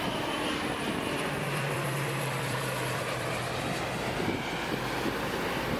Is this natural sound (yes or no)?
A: no